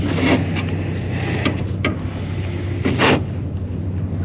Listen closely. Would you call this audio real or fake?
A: real